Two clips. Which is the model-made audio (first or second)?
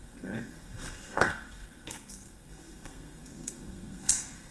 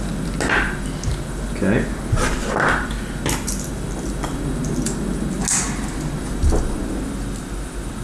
first